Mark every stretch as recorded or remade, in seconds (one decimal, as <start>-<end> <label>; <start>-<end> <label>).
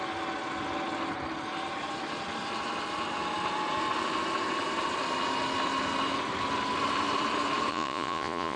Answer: 0.0-7.7 recorded; 7.7-8.6 remade